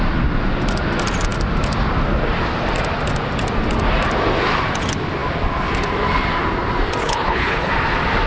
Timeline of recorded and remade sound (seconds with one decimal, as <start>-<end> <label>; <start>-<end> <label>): 0.0-7.0 recorded; 7.0-7.7 remade; 7.7-8.3 recorded